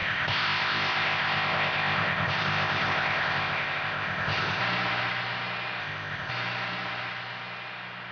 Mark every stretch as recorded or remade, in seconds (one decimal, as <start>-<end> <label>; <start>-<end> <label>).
0.0-4.6 remade; 4.6-5.8 recorded; 5.8-6.3 remade; 6.3-8.1 recorded